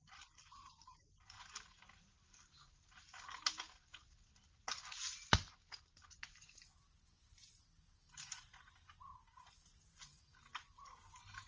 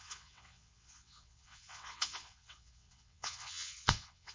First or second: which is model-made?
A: second